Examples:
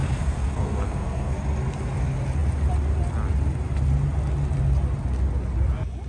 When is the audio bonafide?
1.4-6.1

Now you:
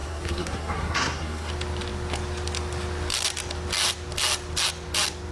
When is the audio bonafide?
1.5-5.3

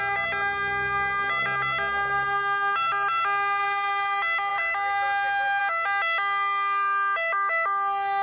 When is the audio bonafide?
0.0-8.2